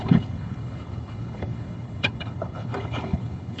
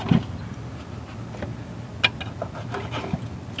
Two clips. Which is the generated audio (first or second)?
first